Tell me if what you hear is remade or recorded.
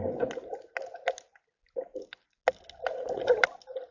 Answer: recorded